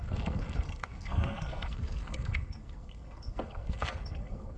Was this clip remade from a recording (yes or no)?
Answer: yes